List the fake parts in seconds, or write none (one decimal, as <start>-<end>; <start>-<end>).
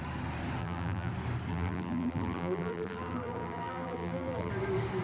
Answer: 0.6-1.1; 1.5-4.5